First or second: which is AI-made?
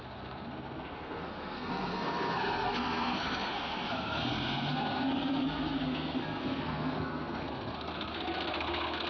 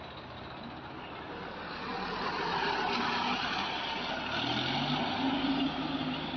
first